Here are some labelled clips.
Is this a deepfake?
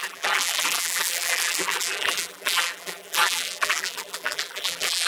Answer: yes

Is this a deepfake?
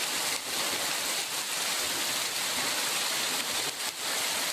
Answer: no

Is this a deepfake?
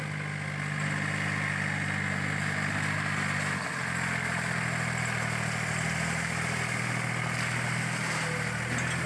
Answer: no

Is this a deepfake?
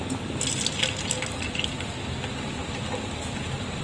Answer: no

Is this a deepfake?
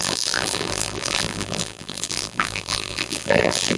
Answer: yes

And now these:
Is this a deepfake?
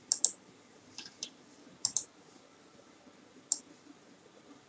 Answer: yes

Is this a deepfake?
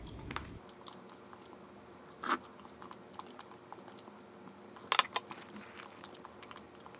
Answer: no